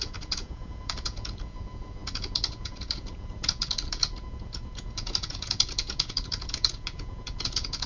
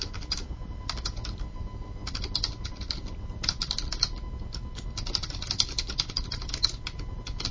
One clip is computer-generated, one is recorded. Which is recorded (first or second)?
second